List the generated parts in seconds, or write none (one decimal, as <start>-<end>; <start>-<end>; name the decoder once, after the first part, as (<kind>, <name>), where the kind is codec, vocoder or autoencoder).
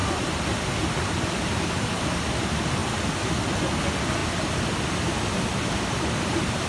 0.0-2.8 (vocoder, BigVGAN v2); 3.8-4.2; 5.3-6.7